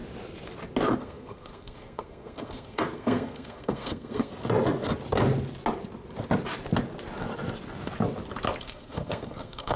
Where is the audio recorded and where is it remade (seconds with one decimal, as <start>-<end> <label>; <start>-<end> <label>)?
0.0-1.0 recorded; 1.0-4.3 remade; 4.3-8.6 recorded; 8.6-9.8 remade